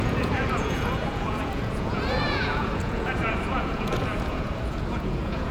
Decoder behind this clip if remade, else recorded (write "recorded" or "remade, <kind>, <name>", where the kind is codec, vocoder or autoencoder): remade, vocoder, Vocos